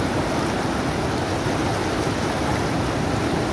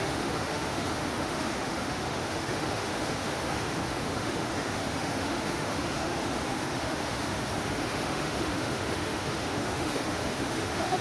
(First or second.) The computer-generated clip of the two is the second